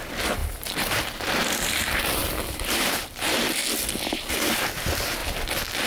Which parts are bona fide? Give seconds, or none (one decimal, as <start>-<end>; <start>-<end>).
3.6-4.1; 5.2-5.9